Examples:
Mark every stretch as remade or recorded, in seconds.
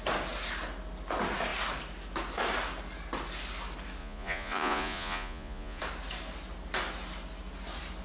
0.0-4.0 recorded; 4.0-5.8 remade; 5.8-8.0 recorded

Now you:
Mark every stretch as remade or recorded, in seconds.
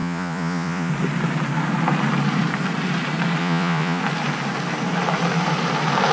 0.0-0.9 remade; 0.9-3.4 recorded; 3.4-4.0 remade; 4.0-6.1 recorded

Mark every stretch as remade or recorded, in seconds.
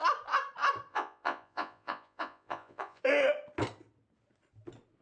0.0-0.9 recorded; 0.9-3.0 remade; 3.0-5.0 recorded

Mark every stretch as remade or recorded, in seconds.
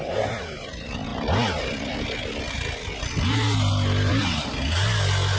0.0-5.4 recorded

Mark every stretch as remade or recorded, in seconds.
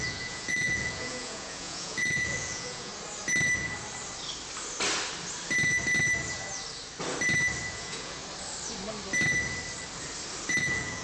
0.0-2.9 remade; 2.9-7.7 recorded; 7.7-8.2 remade; 8.2-10.6 recorded; 10.6-11.0 remade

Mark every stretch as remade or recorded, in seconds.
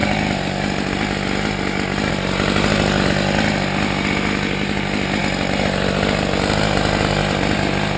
0.0-8.0 recorded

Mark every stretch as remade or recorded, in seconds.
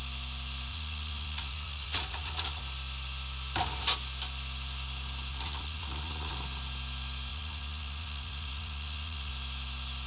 0.0-0.7 recorded; 0.7-2.6 remade; 2.6-5.3 recorded; 5.3-6.3 remade; 6.3-7.3 recorded; 7.3-9.3 remade; 9.3-10.1 recorded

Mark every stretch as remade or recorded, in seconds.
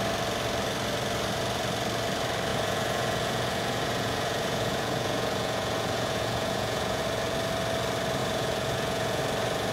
0.0-2.5 recorded; 2.5-7.0 remade; 7.0-8.2 recorded; 8.2-9.2 remade; 9.2-9.7 recorded